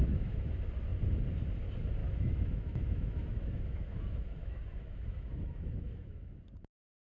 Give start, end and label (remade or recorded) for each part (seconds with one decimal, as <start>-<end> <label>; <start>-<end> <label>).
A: 0.0-0.5 remade; 0.5-2.0 recorded; 2.0-6.3 remade; 6.3-7.1 recorded